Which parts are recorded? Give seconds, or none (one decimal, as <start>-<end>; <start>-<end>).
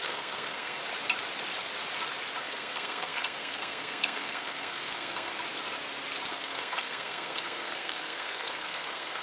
0.8-2.4; 5.3-6.3